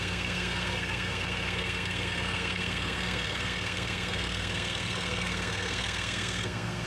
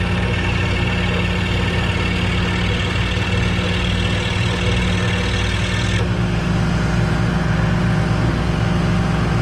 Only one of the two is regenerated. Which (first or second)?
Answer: first